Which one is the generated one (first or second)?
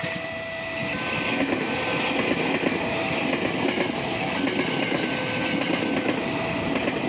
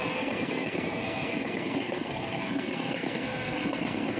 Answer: second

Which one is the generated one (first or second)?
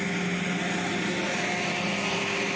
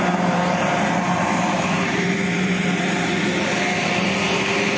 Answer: second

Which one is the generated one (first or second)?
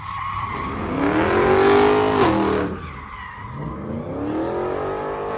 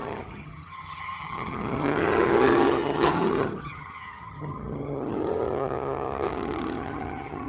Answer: second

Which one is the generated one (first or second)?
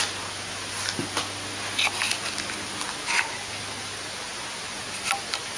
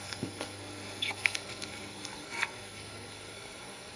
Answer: second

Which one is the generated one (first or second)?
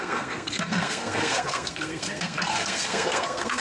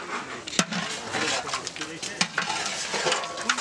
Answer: first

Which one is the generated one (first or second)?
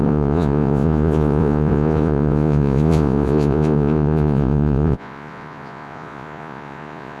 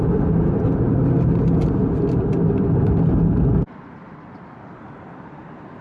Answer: first